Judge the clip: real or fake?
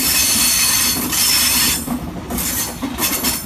real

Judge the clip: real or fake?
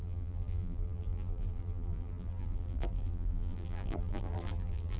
fake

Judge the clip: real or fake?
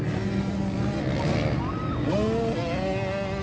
real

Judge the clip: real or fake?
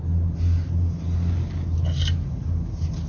real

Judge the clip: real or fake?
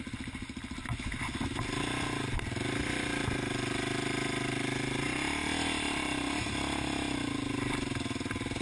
real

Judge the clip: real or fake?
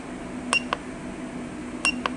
real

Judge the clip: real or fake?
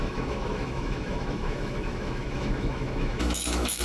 fake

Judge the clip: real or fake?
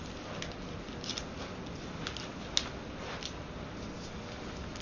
real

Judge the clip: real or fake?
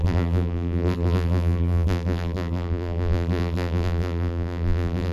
fake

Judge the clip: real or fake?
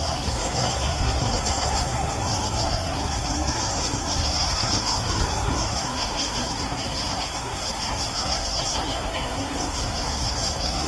fake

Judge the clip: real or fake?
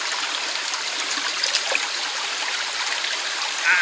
real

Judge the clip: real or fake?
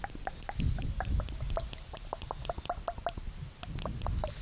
real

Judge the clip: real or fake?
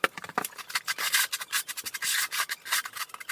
real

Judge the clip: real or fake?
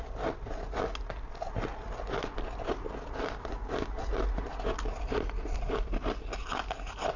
real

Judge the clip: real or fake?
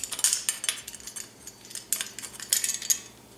real